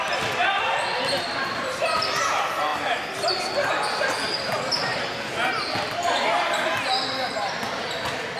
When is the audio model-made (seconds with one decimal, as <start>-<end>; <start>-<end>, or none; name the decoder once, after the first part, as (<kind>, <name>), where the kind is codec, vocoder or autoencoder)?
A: none